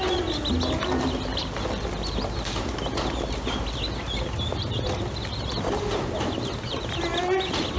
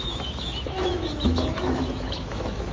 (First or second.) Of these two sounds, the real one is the first